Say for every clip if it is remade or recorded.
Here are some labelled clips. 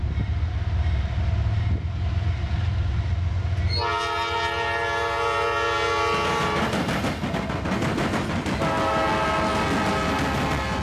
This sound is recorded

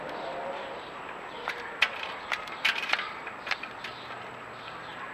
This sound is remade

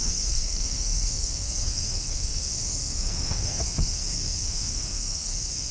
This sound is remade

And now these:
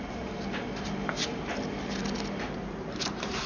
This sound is remade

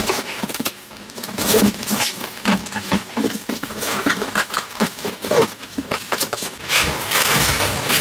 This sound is remade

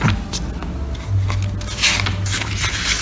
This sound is recorded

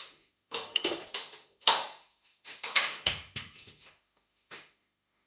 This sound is remade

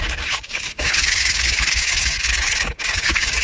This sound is remade